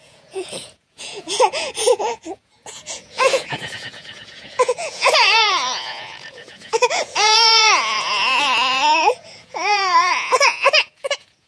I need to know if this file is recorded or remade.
remade